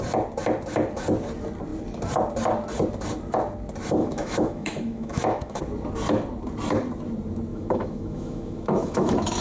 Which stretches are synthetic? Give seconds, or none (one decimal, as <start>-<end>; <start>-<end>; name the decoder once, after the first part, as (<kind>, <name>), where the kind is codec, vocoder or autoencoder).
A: 4.0-5.6 (autoencoder, DAC-VAE); 7.5-9.4